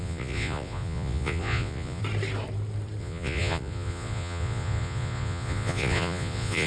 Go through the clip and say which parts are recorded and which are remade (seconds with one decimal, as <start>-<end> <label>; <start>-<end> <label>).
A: 0.0-2.0 remade; 2.0-3.0 recorded; 3.0-6.7 remade